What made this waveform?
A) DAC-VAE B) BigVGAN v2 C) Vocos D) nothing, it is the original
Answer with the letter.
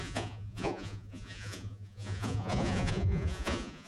C